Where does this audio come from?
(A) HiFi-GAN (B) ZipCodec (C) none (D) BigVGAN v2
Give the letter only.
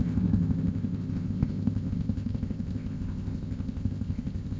B